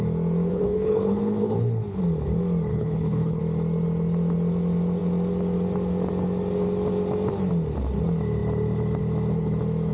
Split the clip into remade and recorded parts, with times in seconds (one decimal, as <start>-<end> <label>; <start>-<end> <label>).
0.0-0.5 recorded; 0.5-2.0 remade; 2.0-2.7 recorded; 2.7-3.4 remade; 3.4-9.9 recorded